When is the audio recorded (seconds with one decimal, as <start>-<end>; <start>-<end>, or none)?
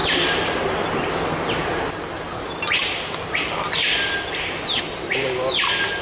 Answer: 0.0-6.0